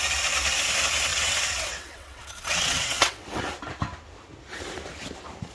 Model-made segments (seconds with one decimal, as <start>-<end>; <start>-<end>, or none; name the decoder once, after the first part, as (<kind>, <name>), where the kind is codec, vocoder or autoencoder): 1.1-3.4 (vocoder, WaveNeXt)